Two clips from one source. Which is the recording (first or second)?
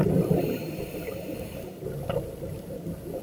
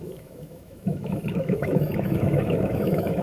first